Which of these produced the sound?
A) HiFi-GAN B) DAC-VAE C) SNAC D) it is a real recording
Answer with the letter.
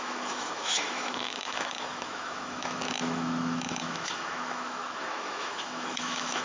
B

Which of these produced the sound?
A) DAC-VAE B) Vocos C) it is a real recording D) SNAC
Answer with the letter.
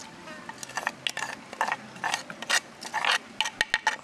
C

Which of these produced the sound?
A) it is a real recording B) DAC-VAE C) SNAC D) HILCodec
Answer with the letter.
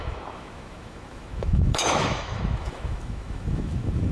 B